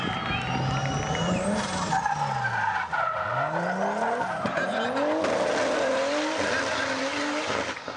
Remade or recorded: recorded